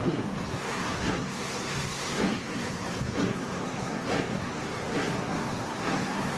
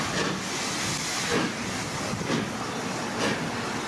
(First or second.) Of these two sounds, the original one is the second